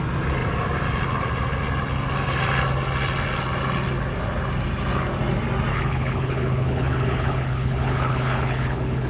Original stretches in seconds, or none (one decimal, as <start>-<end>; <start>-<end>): 0.0-5.7

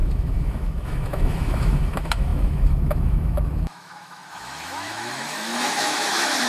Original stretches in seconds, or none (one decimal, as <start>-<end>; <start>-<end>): none

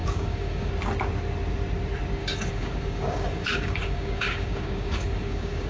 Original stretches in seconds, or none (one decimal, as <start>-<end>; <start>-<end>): 0.7-2.2